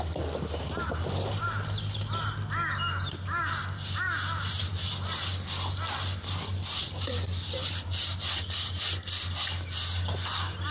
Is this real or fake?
real